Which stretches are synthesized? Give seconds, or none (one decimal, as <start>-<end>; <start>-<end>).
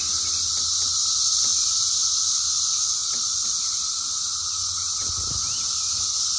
none